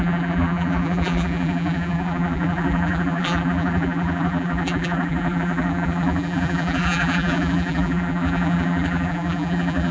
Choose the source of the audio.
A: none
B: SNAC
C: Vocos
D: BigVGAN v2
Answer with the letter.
D